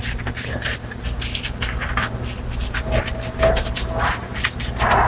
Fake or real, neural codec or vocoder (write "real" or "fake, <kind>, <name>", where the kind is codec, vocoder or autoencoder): real